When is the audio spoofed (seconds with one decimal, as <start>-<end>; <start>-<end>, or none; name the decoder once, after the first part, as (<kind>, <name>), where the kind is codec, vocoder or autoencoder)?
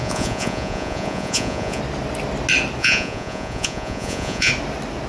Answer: 0.0-1.8 (vocoder, Vocos); 2.8-4.5